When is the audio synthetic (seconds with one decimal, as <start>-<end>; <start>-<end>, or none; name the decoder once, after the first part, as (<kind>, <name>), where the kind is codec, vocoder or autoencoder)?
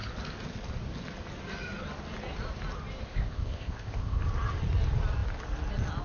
3.1-4.2 (codec, ZipCodec)